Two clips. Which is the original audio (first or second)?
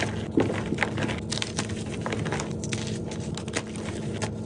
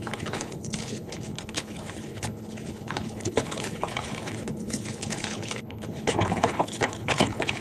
first